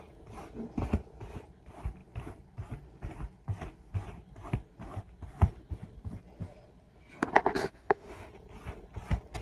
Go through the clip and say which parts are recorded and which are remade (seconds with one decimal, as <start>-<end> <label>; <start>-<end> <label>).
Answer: 0.0-7.6 recorded; 7.6-8.3 remade; 8.3-9.4 recorded